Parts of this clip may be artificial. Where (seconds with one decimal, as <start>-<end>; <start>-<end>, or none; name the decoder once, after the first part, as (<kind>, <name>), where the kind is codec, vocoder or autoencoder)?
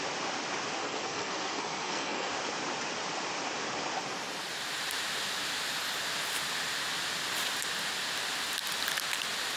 0.8-2.3 (codec, SNAC)